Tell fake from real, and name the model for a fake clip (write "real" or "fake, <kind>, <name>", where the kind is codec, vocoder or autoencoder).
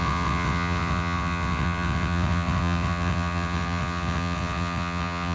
fake, vocoder, WaveNeXt